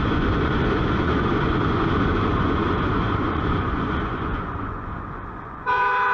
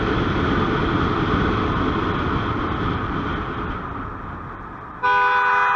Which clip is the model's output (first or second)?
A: first